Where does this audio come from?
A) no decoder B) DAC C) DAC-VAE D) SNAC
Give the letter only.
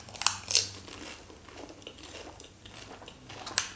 A